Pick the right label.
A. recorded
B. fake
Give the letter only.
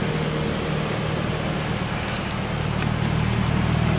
A